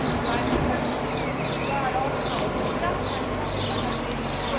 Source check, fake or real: real